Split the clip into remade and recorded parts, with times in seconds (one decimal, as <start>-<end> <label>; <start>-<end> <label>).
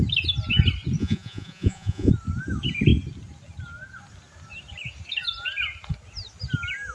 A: 0.0-1.0 recorded; 1.0-2.1 remade; 2.1-6.9 recorded